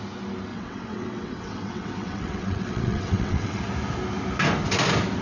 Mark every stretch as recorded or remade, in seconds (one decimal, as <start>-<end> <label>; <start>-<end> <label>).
0.0-0.5 recorded; 0.5-3.6 remade; 3.6-5.2 recorded